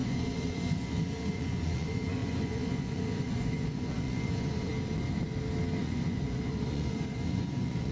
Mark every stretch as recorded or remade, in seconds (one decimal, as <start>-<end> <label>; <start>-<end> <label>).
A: 0.0-4.7 remade; 4.7-5.8 recorded; 5.8-7.9 remade

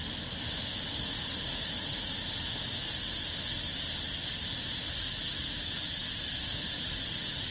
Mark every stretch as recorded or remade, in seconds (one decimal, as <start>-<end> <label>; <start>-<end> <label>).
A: 0.0-7.5 recorded

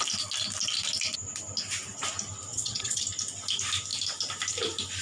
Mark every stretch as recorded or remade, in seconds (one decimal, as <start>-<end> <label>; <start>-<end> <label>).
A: 0.0-2.5 recorded; 2.5-3.0 remade; 3.0-5.0 recorded

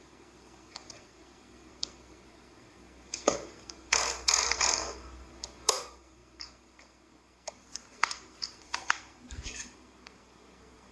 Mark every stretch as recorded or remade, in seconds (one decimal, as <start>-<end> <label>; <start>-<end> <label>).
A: 0.0-10.9 remade

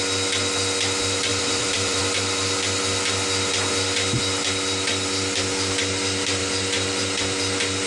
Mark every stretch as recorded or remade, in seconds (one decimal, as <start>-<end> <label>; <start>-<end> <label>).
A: 0.0-1.3 recorded; 1.3-2.0 remade; 2.0-7.9 recorded

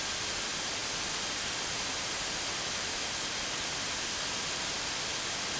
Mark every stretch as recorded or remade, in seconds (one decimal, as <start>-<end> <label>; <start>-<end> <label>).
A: 0.0-0.8 remade; 0.8-4.1 recorded; 4.1-5.6 remade

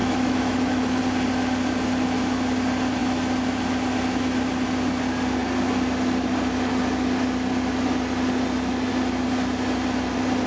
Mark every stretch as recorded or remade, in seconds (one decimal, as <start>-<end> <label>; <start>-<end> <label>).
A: 0.0-1.0 remade; 1.0-10.5 recorded

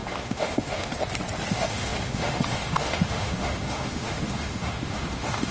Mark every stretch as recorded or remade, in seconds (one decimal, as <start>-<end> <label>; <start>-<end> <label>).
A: 0.0-0.9 remade; 0.9-1.5 recorded; 1.5-5.5 remade